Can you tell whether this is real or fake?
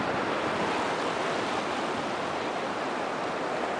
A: real